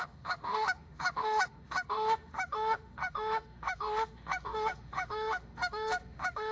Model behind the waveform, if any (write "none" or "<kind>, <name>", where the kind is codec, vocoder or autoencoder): autoencoder, DAC-VAE